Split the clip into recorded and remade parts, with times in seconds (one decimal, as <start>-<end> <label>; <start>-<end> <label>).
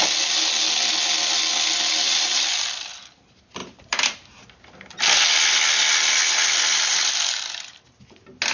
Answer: 0.0-3.6 recorded; 3.6-4.4 remade; 4.4-8.5 recorded